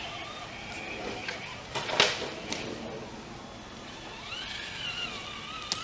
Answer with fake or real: real